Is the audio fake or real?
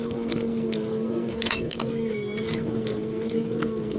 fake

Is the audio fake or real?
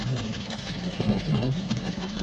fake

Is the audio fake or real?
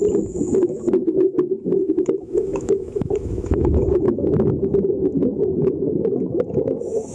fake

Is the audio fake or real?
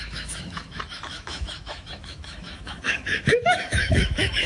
fake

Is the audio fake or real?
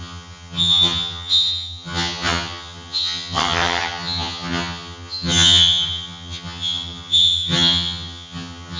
fake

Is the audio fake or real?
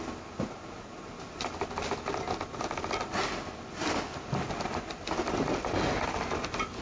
real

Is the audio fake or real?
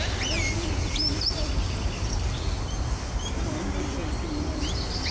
real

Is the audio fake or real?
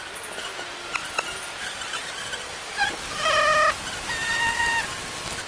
real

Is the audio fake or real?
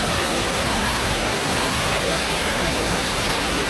fake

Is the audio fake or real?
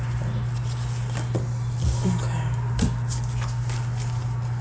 real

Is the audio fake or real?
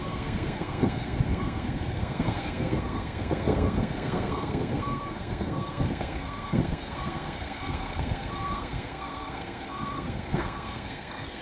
fake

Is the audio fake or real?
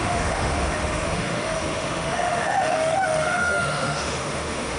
fake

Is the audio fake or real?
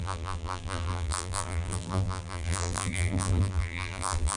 fake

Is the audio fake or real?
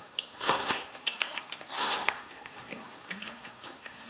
fake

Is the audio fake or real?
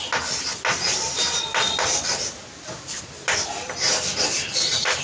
real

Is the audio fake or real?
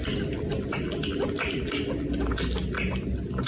real